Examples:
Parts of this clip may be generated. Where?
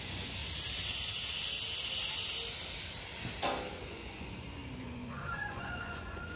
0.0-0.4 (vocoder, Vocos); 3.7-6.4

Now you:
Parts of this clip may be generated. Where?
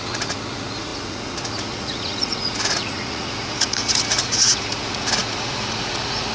0.0-6.3 (vocoder, Vocos)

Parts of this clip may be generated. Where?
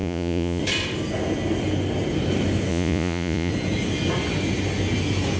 0.0-0.6 (vocoder, Vocos); 2.7-3.5